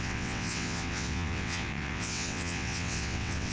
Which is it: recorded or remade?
remade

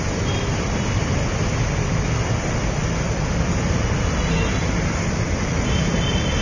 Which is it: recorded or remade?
recorded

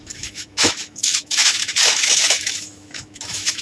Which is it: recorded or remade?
remade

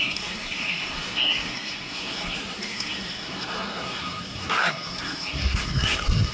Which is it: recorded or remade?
remade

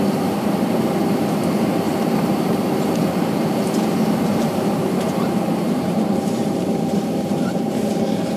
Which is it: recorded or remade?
remade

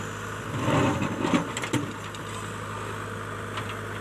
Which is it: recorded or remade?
recorded